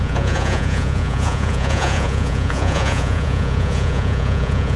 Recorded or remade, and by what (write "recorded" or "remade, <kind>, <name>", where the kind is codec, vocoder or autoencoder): remade, vocoder, Vocos